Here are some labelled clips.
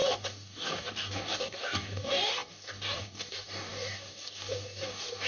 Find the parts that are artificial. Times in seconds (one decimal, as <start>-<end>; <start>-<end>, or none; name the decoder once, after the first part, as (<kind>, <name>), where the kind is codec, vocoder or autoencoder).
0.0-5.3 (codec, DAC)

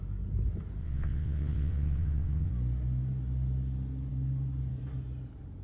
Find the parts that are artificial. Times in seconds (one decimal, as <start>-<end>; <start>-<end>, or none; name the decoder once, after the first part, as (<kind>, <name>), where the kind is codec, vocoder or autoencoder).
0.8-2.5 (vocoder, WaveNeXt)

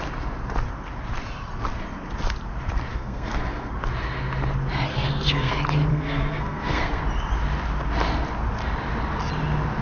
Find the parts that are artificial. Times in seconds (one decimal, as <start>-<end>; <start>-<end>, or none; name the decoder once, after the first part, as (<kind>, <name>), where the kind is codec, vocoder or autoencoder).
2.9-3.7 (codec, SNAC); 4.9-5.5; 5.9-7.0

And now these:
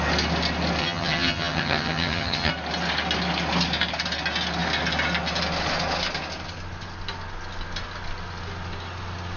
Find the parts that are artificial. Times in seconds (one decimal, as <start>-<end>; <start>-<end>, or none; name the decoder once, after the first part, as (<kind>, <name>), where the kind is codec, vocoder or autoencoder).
0.8-2.5 (vocoder, HiFi-GAN)

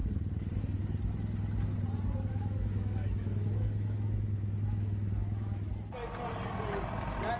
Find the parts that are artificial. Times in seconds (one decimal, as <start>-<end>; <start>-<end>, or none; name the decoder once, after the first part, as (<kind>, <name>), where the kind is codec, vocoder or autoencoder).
2.3-5.7 (autoencoder, DAC-VAE)